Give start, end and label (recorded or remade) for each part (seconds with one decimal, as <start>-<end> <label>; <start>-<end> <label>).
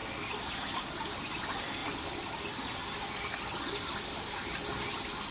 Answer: 0.0-5.3 recorded